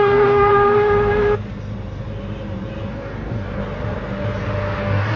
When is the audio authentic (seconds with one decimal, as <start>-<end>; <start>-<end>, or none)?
0.5-2.9; 3.6-4.8